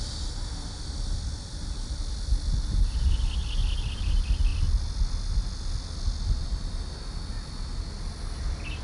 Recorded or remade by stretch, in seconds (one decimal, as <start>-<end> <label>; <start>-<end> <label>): 0.0-8.8 recorded

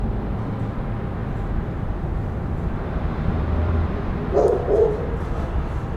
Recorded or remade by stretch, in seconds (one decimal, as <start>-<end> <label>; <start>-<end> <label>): 0.0-1.2 recorded; 1.2-4.6 remade; 4.6-6.0 recorded

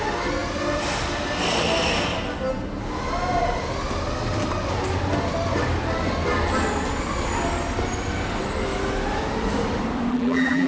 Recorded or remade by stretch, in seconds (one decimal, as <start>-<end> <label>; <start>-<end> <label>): 0.0-10.1 recorded; 10.1-10.7 remade

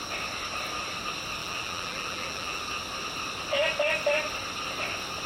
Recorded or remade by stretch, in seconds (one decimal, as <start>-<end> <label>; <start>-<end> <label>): 0.0-1.4 recorded; 1.4-2.6 remade; 2.6-5.3 recorded